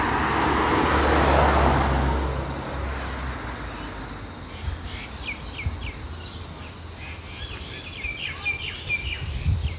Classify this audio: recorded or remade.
recorded